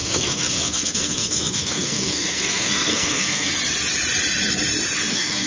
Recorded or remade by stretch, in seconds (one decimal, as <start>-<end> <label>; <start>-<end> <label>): 0.0-3.5 remade; 3.5-5.1 recorded; 5.1-5.5 remade